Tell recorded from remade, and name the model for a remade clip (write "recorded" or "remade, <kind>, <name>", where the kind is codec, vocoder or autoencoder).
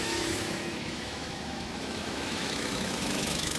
remade, autoencoder, DAC-VAE